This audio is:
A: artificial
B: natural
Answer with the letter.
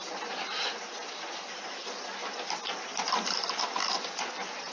B